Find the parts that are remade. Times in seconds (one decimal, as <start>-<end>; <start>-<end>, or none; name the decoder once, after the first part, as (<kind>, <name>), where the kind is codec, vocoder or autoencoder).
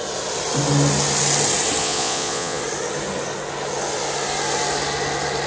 1.8-2.6 (vocoder, Vocos)